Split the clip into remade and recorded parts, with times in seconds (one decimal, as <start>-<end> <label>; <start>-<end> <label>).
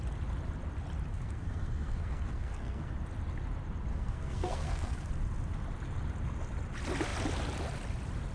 0.0-1.1 recorded; 1.1-2.9 remade; 2.9-3.9 recorded; 3.9-5.1 remade; 5.1-8.3 recorded